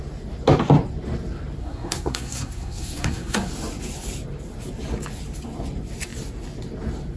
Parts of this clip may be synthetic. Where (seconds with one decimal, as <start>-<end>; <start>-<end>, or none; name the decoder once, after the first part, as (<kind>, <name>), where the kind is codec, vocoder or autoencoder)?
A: 1.6-3.5 (codec, SNAC)